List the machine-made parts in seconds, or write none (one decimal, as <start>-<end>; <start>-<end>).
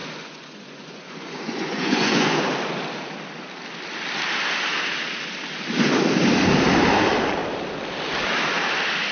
0.0-2.4